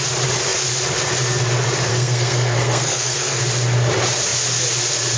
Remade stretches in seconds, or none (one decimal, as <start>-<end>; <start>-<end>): 1.9-3.4